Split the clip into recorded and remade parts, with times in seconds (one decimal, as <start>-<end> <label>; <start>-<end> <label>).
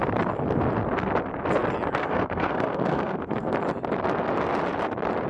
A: 0.0-2.0 recorded; 2.0-3.5 remade; 3.5-5.3 recorded